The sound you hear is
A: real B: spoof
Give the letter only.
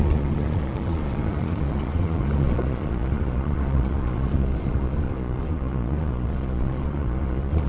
B